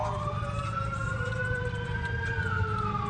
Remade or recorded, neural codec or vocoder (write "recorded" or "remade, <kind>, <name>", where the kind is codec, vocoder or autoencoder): recorded